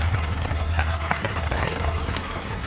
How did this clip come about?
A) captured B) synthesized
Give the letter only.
B